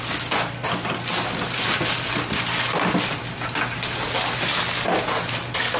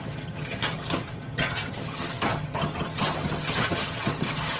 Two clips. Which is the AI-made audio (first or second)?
second